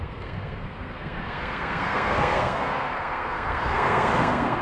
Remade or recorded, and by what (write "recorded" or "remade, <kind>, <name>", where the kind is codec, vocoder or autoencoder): remade, codec, SNAC